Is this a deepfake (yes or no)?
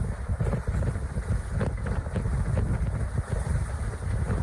no